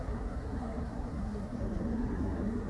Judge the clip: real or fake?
fake